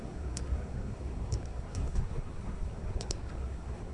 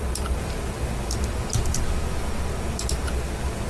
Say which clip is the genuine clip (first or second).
second